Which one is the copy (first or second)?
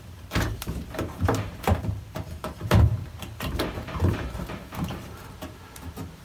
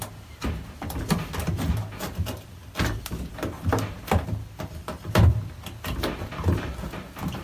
first